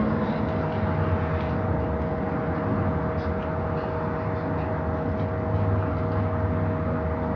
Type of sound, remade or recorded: recorded